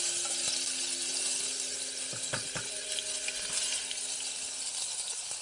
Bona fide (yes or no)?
yes